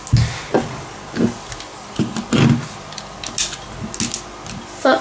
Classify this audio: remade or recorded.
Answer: recorded